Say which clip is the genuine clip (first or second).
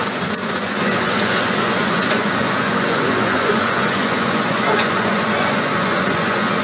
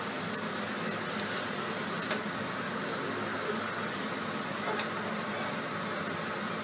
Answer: second